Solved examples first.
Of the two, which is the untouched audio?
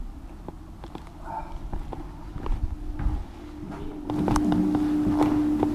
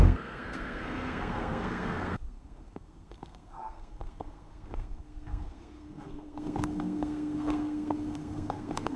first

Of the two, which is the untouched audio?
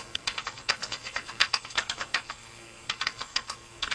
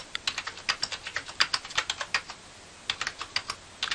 second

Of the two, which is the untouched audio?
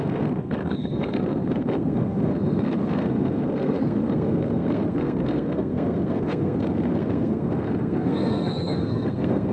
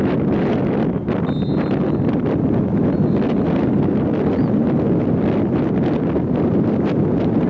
second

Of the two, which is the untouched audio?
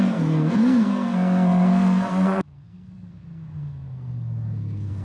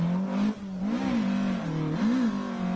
second